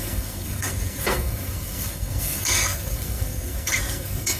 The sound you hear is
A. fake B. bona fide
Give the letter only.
A